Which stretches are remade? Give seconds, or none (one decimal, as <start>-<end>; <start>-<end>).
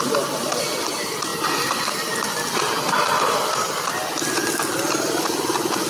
none